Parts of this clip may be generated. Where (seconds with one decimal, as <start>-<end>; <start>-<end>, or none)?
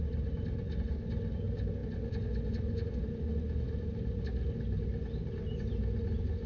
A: none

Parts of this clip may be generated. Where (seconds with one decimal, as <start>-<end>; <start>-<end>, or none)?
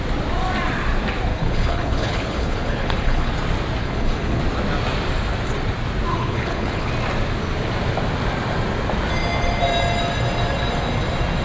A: 1.3-3.3; 3.8-4.4; 6.1-6.9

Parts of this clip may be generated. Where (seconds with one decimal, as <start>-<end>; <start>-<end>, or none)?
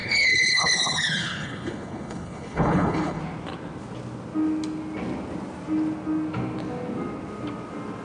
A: 0.0-3.2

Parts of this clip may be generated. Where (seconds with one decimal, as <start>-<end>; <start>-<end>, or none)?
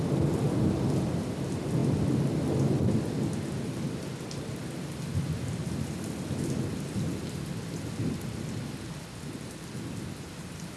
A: none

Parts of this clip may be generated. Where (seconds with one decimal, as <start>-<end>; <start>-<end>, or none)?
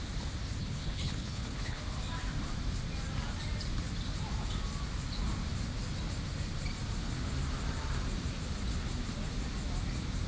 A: 0.6-1.8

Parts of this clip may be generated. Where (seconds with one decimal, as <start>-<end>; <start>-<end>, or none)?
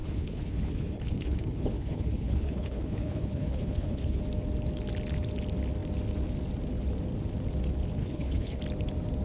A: 0.0-4.2; 8.0-8.6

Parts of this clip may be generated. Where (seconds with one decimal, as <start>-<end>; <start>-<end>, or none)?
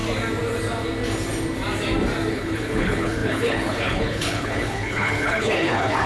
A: 2.3-6.1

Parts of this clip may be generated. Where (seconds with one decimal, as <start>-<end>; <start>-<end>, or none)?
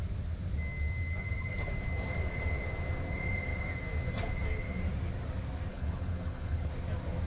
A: 5.7-6.7